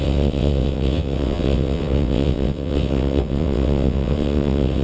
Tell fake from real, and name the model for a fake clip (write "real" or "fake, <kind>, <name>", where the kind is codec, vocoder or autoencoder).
fake, vocoder, WaveNeXt